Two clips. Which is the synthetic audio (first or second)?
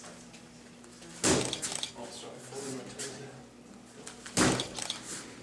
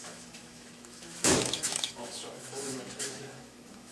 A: second